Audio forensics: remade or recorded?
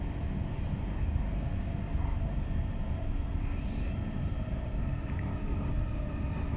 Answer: remade